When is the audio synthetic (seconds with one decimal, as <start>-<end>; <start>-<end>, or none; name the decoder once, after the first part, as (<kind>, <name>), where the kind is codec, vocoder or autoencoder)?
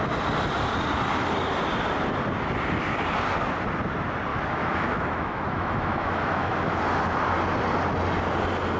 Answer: 4.3-6.8 (autoencoder, DAC-VAE)